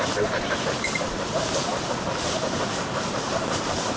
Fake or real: fake